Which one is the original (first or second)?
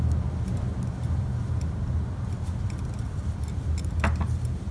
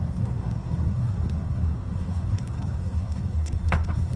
first